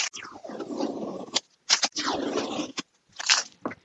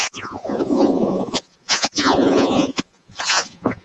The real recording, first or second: first